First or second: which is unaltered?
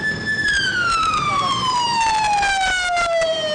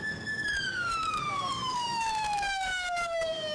first